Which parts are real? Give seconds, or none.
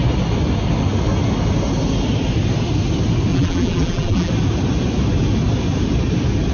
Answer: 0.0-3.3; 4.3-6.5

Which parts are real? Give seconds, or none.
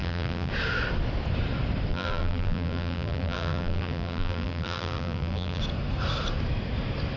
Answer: 0.5-1.9; 5.6-7.2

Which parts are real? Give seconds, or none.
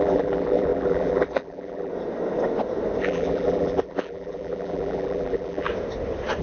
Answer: 1.9-3.0; 5.7-6.4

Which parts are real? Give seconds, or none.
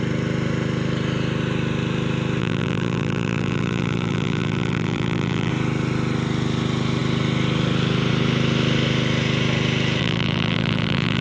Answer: 0.0-2.4; 5.5-10.0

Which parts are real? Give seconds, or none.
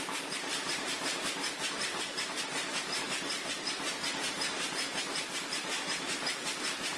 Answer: 1.1-4.9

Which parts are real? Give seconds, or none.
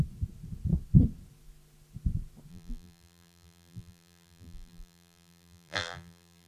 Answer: 0.0-2.5